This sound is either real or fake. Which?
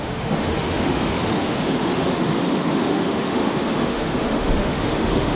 fake